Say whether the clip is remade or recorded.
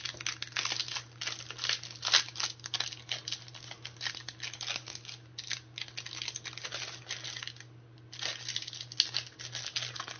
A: recorded